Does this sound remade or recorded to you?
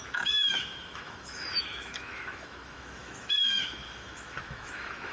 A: remade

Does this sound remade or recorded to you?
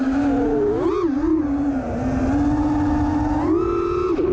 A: recorded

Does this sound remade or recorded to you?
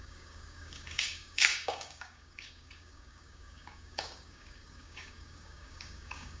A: remade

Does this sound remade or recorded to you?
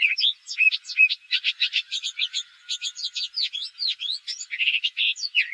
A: recorded